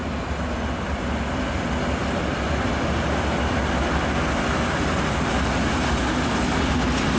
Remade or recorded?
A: recorded